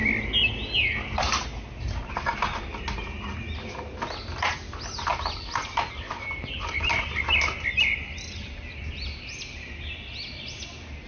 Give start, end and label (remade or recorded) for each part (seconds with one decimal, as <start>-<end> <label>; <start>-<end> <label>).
0.0-11.1 recorded